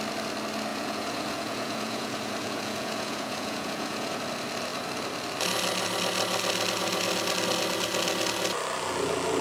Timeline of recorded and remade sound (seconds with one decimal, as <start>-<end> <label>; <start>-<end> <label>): 0.0-0.7 recorded; 0.7-4.2 remade; 4.2-9.4 recorded